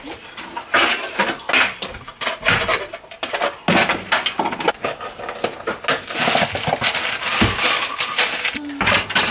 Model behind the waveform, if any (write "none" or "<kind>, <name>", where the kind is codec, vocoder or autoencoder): none